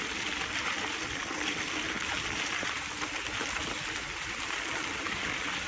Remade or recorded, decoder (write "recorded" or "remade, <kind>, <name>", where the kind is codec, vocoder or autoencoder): recorded